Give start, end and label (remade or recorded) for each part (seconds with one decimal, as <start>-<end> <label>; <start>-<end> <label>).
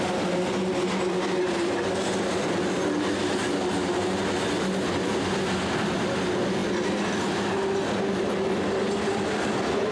0.0-9.9 recorded